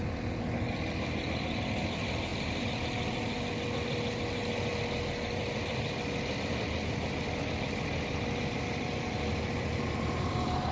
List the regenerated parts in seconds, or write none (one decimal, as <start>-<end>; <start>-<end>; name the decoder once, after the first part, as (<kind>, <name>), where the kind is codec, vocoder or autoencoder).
none